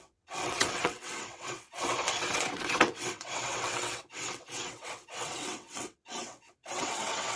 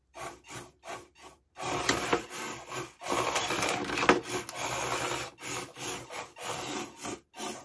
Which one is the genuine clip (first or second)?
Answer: second